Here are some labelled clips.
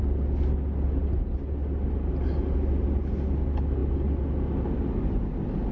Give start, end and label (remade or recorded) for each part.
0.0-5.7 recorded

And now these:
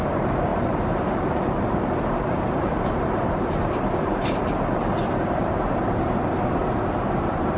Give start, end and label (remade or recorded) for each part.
0.0-7.6 remade

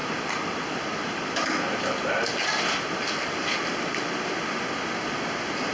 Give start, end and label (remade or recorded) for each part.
0.0-5.7 recorded

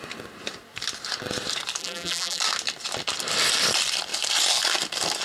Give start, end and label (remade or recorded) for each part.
0.0-1.8 recorded; 1.8-2.4 remade; 2.4-5.2 recorded

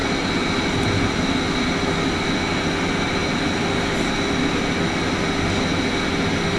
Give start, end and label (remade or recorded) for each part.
0.0-6.6 recorded

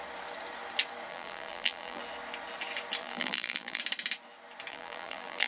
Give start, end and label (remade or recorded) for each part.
0.0-1.1 recorded; 1.1-2.0 remade; 2.0-3.0 recorded; 3.0-3.8 remade; 3.8-4.7 recorded; 4.7-5.5 remade

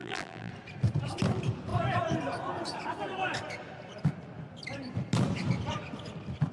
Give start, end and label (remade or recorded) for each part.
0.0-0.5 remade; 0.5-6.5 recorded